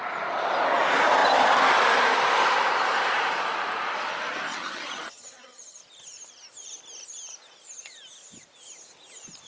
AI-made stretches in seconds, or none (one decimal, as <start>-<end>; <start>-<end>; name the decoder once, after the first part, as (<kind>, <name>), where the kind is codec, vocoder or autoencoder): 4.5-5.8 (vocoder, HiFi-GAN)